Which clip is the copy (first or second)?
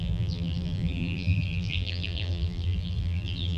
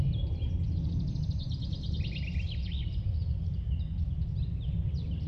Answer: first